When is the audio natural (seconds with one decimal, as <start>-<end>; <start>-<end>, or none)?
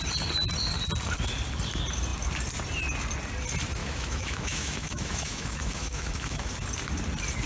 0.0-3.8; 6.5-7.5